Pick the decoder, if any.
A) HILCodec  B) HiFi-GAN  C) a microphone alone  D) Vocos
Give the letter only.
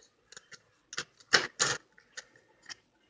C